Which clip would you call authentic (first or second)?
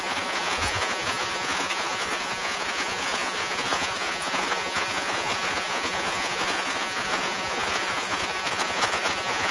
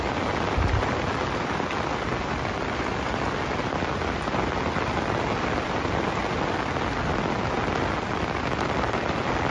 second